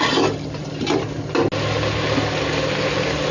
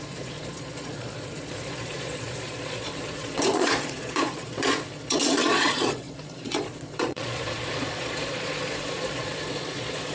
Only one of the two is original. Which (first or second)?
first